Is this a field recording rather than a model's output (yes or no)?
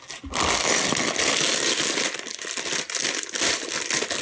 yes